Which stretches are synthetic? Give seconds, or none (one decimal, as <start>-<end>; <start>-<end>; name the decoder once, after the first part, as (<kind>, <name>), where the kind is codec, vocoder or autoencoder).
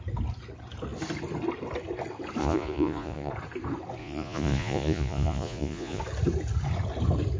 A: 2.4-3.3 (vocoder, Vocos); 4.0-6.0